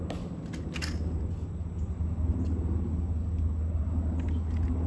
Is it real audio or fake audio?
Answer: real